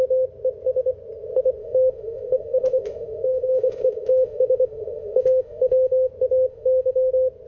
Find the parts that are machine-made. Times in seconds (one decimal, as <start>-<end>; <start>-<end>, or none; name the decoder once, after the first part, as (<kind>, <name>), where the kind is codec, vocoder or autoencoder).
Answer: 1.6-6.1 (autoencoder, DAC-VAE); 6.5-7.1